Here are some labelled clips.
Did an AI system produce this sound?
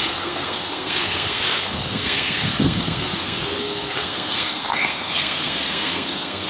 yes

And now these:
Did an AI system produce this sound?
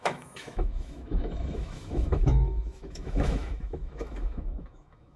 yes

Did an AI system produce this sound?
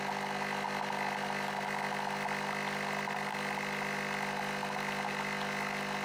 no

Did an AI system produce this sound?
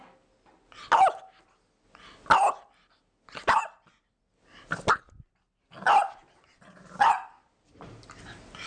no